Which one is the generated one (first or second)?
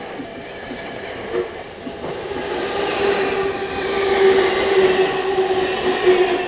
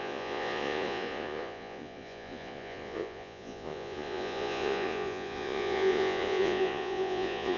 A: second